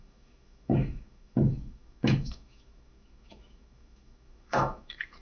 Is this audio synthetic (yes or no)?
yes